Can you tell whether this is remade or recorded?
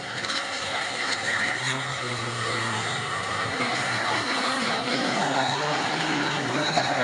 remade